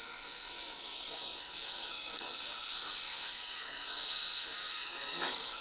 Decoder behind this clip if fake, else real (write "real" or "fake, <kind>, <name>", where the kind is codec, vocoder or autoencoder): fake, codec, SNAC